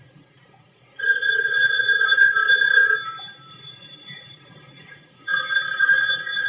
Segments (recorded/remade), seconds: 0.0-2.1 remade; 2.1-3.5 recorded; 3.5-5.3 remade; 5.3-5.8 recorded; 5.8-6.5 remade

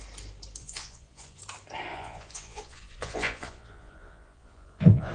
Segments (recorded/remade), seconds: 0.0-0.6 recorded; 0.6-1.4 remade; 1.4-1.9 recorded; 1.9-5.1 remade

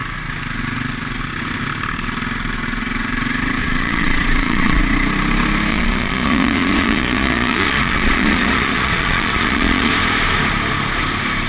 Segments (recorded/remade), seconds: 0.0-3.6 recorded; 3.6-4.8 remade; 4.8-5.7 recorded; 5.7-9.9 remade; 9.9-11.5 recorded

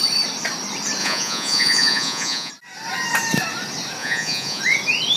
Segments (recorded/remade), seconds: 0.0-1.0 recorded; 1.0-2.5 remade; 2.5-4.0 recorded; 4.0-4.6 remade; 4.6-5.2 recorded

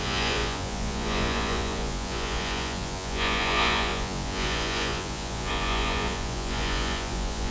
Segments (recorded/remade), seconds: 0.0-7.5 remade

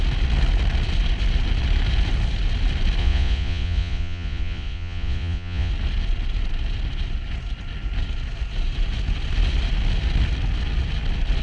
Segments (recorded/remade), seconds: 0.0-3.0 recorded; 3.0-5.7 remade; 5.7-11.4 recorded

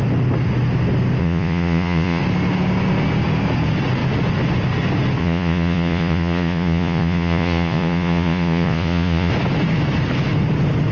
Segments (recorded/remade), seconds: 0.0-1.2 recorded; 1.2-2.2 remade; 2.2-5.2 recorded; 5.2-9.3 remade; 9.3-10.9 recorded

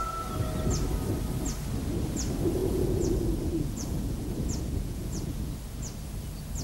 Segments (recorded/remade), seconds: 0.0-2.6 recorded; 2.6-5.5 remade; 5.5-6.6 recorded